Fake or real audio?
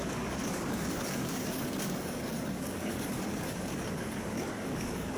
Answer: fake